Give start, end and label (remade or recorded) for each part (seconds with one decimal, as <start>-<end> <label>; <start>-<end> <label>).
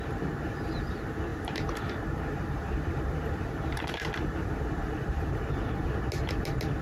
0.0-1.3 recorded; 1.3-5.4 remade; 5.4-6.8 recorded